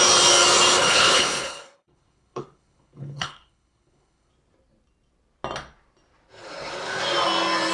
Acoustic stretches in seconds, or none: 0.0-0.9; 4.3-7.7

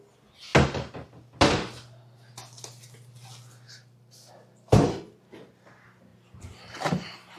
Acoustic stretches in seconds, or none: 0.0-6.1

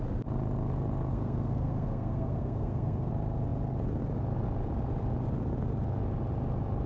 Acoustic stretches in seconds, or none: 0.0-1.1; 3.1-6.9

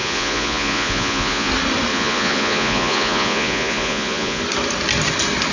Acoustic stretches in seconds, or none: 1.5-1.9; 4.4-5.5